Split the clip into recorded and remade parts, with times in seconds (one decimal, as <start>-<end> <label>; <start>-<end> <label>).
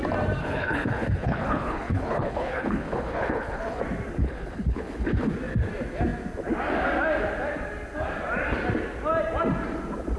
0.0-0.4 recorded; 0.4-3.8 remade; 3.8-4.2 recorded; 4.2-5.3 remade; 5.3-10.2 recorded